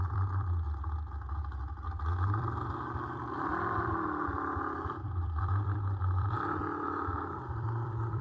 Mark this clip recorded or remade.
remade